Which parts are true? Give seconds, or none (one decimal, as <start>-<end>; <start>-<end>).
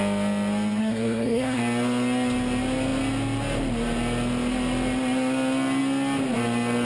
0.0-0.8; 1.6-6.8